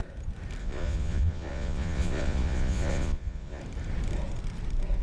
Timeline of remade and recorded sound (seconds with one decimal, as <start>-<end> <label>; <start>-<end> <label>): 0.0-0.6 recorded; 0.6-3.6 remade; 3.6-5.0 recorded